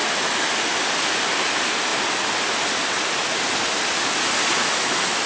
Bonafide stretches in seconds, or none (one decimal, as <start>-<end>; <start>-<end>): 0.0-5.3